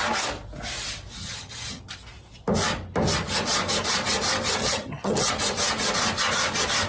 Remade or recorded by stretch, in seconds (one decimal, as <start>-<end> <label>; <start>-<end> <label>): 0.0-1.2 recorded; 1.2-1.8 remade; 1.8-4.6 recorded; 4.6-5.3 remade; 5.3-6.9 recorded